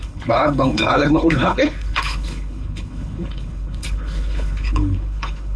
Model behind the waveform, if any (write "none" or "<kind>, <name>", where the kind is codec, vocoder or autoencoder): codec, HILCodec